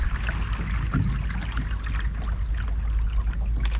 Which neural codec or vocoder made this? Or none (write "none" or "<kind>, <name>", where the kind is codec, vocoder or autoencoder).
none